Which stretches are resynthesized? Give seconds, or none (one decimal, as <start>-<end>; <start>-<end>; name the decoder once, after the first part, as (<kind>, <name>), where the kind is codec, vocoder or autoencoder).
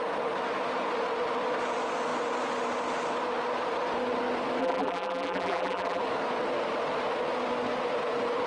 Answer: 4.6-6.0 (vocoder, BigVGAN v2)